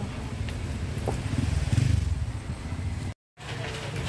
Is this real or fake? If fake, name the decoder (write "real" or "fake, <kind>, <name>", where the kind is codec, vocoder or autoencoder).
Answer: real